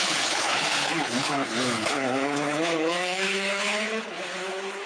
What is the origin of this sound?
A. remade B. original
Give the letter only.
A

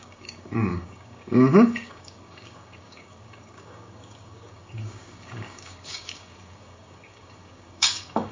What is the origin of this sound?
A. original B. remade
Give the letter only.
B